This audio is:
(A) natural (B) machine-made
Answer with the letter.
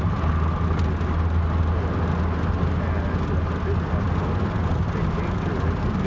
A